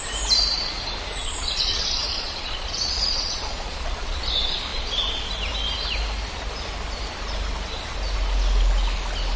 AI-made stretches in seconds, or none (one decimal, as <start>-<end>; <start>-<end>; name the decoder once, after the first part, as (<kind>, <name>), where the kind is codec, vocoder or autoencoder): 1.2-4.2 (vocoder, Vocos)